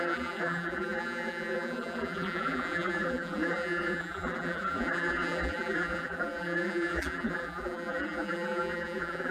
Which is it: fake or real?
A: fake